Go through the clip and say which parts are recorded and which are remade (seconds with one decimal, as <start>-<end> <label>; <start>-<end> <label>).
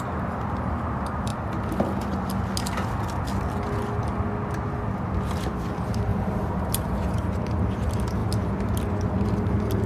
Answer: 0.0-6.1 recorded; 6.1-7.3 remade; 7.3-9.9 recorded